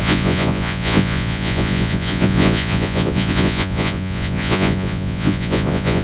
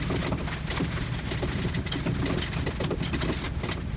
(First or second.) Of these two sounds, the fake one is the first